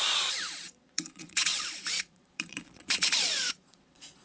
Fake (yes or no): yes